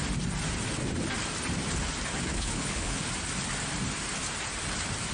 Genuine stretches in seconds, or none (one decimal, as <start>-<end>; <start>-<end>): 0.0-2.3; 3.1-5.1